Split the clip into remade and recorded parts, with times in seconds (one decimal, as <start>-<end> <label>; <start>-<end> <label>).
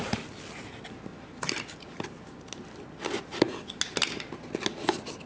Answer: 0.0-5.3 recorded